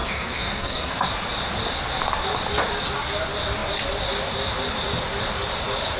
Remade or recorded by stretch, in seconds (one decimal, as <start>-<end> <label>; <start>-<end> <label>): 0.0-0.9 remade; 0.9-6.0 recorded